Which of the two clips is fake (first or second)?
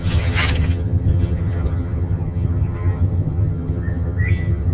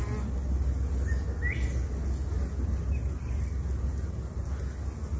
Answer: first